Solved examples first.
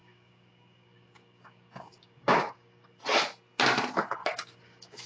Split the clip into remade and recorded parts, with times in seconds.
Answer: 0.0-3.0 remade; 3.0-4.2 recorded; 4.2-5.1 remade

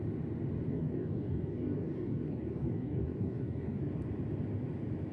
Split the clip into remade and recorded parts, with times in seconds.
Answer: 0.0-0.7 recorded; 0.7-3.8 remade; 3.8-5.1 recorded

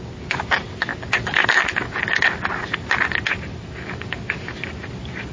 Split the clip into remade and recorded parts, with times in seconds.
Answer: 0.0-5.3 recorded

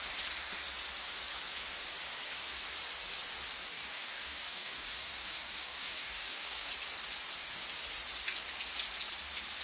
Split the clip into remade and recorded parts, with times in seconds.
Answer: 0.0-3.7 recorded; 3.7-6.7 remade; 6.7-9.6 recorded

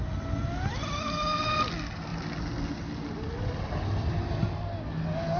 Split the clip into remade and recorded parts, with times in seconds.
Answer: 0.0-5.4 recorded